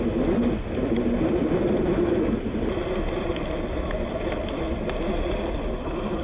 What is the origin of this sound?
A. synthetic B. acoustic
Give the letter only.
B